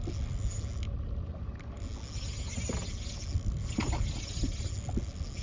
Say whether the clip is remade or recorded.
recorded